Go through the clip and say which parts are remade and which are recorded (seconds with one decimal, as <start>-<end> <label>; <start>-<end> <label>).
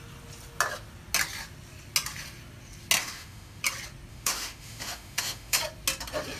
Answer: 0.0-3.0 recorded; 3.0-3.6 remade; 3.6-4.1 recorded; 4.1-5.6 remade; 5.6-6.4 recorded